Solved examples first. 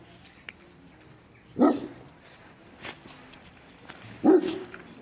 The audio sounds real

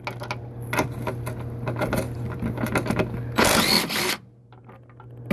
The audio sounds real